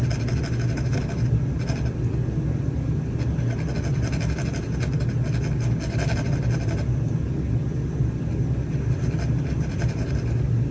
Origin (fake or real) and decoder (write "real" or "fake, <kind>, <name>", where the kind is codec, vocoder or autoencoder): real